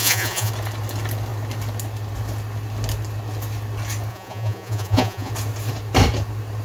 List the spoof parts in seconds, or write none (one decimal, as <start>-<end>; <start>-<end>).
0.0-0.5; 4.1-5.3